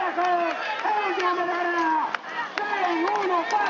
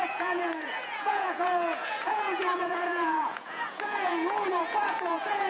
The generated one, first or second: second